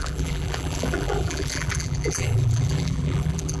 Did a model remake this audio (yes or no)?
yes